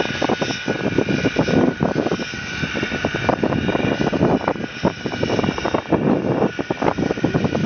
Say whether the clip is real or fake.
real